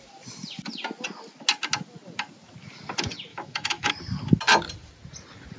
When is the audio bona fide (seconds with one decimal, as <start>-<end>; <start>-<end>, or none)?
0.0-3.3; 3.9-5.6